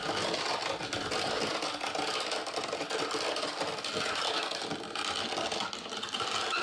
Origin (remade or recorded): recorded